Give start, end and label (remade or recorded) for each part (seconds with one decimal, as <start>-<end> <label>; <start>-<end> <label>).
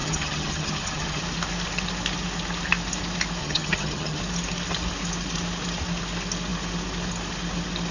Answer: 0.0-1.2 remade; 1.2-3.4 recorded; 3.4-4.2 remade; 4.2-7.9 recorded